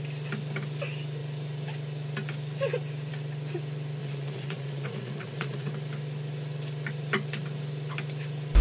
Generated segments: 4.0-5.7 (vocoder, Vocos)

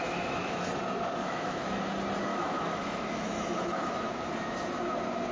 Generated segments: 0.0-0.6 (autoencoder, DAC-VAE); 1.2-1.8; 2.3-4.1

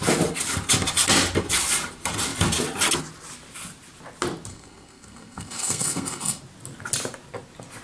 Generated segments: 4.5-6.4 (codec, SNAC)

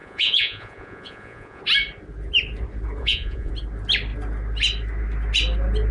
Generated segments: 0.0-1.6 (vocoder, Vocos); 3.0-3.5

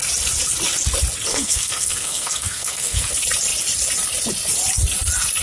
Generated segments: 1.3-3.1 (codec, SNAC)

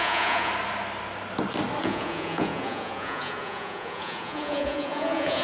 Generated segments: 0.0-0.5 (vocoder, Vocos); 1.8-5.4

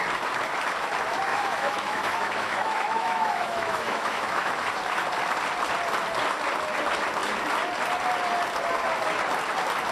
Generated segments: 1.3-4.7 (autoencoder, DAC-VAE)